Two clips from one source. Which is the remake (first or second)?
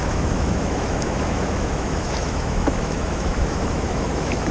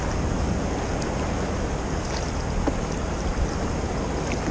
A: first